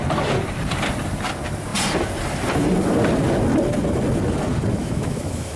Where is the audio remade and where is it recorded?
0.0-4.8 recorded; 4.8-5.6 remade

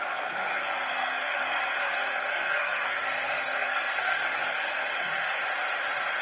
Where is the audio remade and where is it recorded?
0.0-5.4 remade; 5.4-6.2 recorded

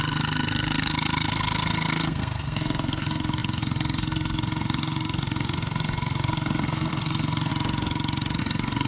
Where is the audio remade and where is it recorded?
0.0-7.5 remade; 7.5-8.4 recorded; 8.4-8.9 remade